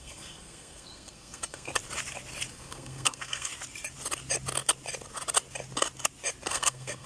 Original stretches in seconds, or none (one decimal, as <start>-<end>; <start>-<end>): 1.7-2.5; 3.5-6.5